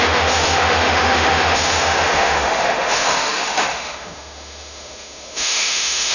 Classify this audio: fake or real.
fake